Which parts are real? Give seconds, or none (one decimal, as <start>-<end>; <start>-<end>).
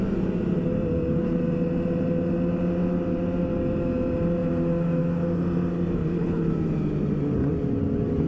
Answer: 0.0-6.0; 6.5-8.3